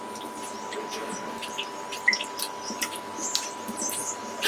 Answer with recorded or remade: recorded